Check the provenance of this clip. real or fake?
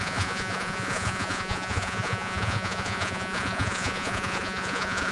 fake